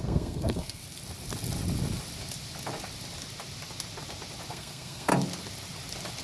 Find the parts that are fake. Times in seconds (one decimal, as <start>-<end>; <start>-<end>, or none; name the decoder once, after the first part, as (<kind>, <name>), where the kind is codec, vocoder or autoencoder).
0.0-0.8 (codec, SNAC); 4.5-5.1